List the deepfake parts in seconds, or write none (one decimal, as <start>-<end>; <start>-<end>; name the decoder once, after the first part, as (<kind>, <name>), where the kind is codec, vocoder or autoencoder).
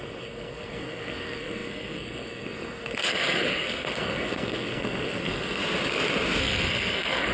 0.0-5.6 (codec, SNAC); 6.4-7.3